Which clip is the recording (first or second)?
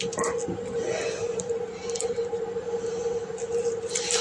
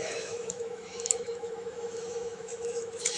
first